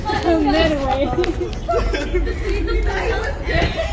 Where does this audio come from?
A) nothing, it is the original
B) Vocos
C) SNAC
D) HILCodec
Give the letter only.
A